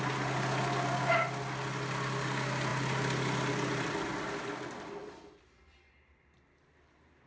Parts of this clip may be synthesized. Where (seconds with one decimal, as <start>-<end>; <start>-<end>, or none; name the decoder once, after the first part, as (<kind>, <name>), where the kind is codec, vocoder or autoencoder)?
none